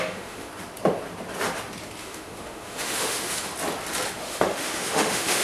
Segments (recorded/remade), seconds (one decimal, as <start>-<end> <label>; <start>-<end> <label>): 0.0-0.5 remade; 0.5-2.0 recorded; 2.0-3.5 remade; 3.5-4.1 recorded; 4.1-5.4 remade